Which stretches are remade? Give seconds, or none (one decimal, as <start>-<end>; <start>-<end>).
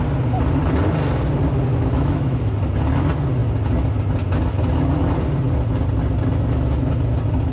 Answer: 1.7-2.4